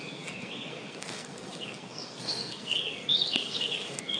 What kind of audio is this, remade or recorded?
remade